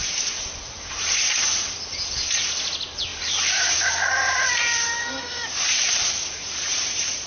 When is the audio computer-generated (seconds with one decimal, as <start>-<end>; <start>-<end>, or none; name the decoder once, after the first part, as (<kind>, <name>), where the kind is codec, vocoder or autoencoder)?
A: 3.1-7.3 (vocoder, BigVGAN v2)